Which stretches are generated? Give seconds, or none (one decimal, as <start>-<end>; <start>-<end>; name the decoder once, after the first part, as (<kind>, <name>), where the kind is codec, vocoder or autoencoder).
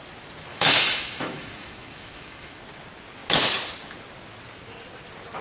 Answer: 0.5-2.6 (autoencoder, DAC-VAE)